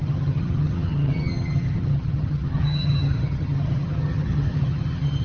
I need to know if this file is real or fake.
fake